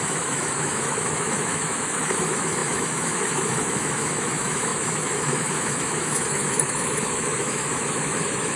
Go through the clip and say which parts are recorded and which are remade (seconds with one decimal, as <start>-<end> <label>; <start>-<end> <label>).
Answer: 0.0-8.6 remade